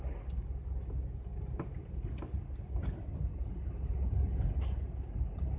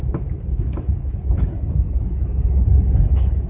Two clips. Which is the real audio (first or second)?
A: first